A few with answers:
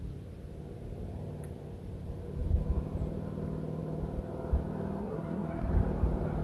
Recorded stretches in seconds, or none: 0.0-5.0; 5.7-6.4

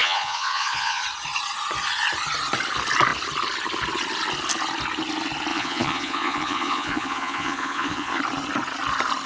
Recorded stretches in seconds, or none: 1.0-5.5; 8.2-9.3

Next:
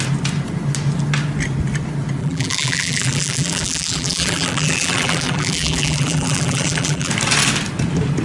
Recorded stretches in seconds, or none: 0.0-2.2; 7.1-8.2

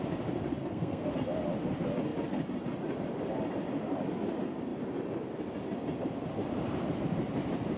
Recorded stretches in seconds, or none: 0.0-0.6; 1.1-7.8